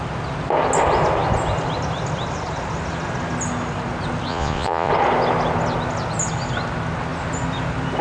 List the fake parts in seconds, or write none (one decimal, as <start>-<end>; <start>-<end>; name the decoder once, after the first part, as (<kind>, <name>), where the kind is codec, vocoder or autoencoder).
4.3-4.9 (vocoder, Vocos)